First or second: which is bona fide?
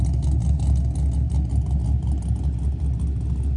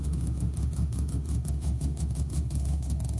first